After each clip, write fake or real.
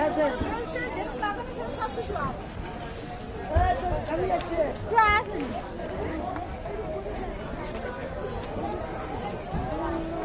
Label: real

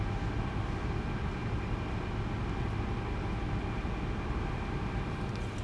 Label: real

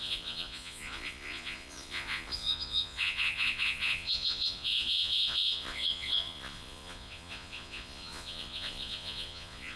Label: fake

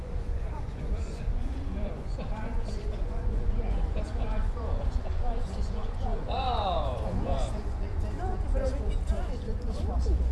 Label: fake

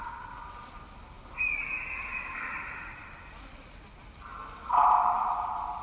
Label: real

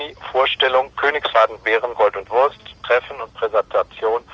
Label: real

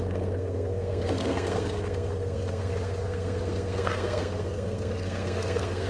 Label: fake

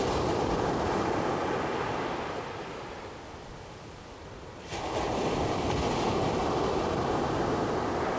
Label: real